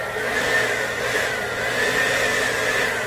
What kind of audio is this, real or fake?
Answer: real